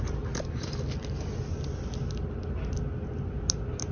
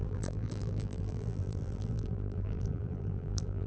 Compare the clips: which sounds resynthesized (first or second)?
second